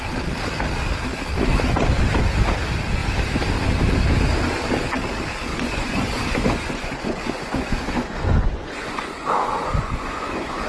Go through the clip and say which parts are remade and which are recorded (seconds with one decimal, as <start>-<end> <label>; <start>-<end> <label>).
0.0-5.5 recorded; 5.5-10.7 remade